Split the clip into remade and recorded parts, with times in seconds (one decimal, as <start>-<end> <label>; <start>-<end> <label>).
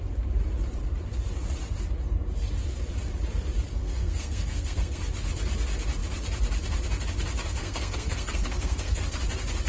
0.0-3.7 recorded; 3.7-5.0 remade; 5.0-7.6 recorded; 7.6-9.0 remade; 9.0-9.7 recorded